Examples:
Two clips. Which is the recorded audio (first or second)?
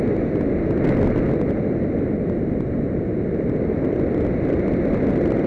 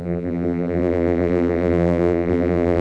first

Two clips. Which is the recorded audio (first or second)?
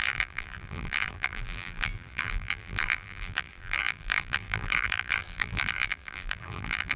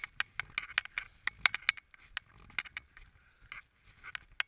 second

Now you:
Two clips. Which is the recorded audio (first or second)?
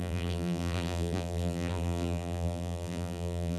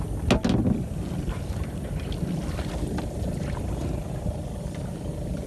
second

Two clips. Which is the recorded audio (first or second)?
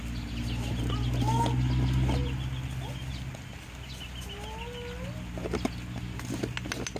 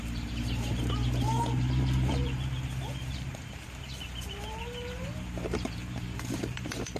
first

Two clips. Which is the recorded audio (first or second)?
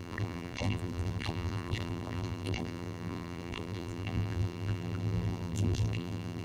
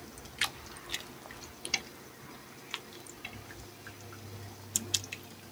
second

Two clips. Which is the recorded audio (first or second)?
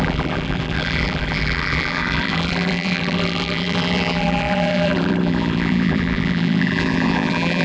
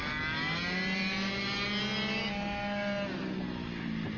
second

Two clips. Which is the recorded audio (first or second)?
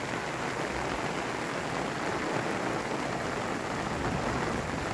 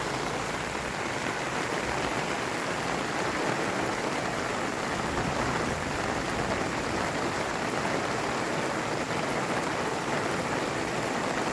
first